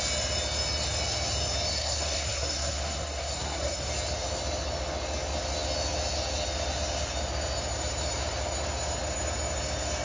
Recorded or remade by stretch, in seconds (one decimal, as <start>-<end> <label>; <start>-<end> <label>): 0.0-1.7 recorded; 1.7-3.9 remade; 3.9-10.0 recorded